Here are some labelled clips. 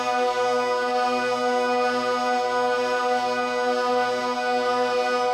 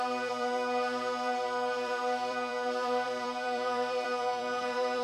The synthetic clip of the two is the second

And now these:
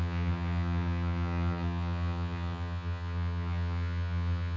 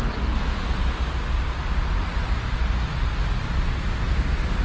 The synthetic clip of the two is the first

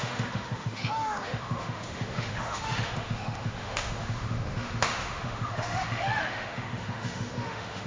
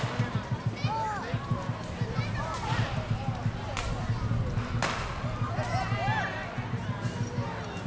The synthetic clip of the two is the first